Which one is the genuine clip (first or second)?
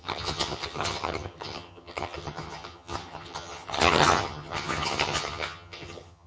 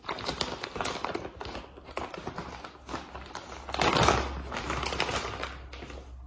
second